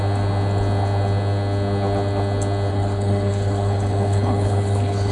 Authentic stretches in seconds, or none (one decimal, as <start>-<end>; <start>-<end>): 0.0-2.7